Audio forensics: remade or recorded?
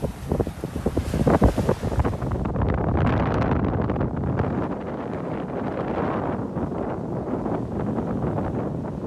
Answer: recorded